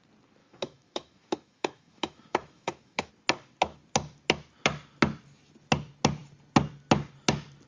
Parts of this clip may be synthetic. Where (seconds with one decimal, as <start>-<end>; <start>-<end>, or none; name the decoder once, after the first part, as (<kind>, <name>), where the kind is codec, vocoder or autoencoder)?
0.4-3.1 (autoencoder, DAC-VAE)